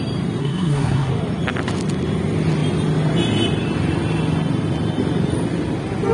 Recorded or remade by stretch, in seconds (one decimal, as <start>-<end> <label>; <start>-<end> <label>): 0.0-0.4 recorded; 0.4-1.1 remade; 1.1-6.1 recorded

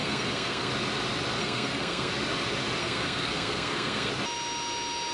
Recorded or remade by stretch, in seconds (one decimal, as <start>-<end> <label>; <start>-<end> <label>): 0.0-0.7 remade; 0.7-1.4 recorded; 1.4-2.1 remade; 2.1-2.8 recorded; 2.8-4.1 remade; 4.1-5.1 recorded